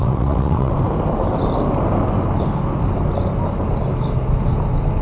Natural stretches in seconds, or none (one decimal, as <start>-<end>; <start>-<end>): 0.7-5.0